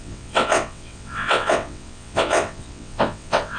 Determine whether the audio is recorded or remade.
remade